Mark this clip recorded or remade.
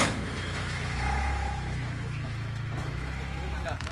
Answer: remade